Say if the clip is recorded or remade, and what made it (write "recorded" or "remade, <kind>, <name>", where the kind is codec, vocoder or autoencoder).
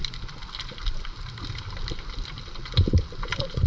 recorded